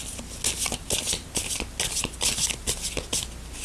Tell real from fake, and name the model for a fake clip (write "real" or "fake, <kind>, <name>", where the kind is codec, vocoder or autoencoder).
real